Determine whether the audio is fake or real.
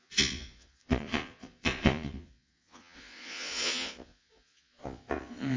fake